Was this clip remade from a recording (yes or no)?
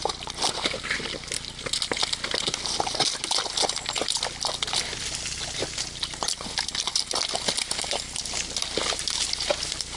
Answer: no